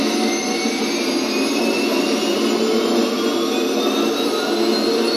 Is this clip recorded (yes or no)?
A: yes